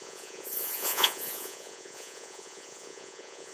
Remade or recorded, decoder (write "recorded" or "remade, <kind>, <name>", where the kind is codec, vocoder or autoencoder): remade, vocoder, Vocos